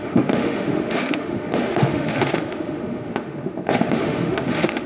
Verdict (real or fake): fake